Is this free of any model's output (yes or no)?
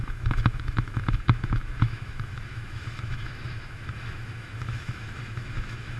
no